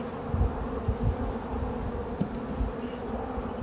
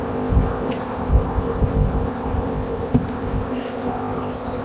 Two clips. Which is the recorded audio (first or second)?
first